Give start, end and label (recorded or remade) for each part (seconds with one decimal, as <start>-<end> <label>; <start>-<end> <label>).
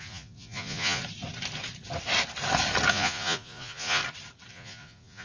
0.0-1.0 remade; 1.0-2.9 recorded; 2.9-4.0 remade; 4.0-4.5 recorded; 4.5-5.2 remade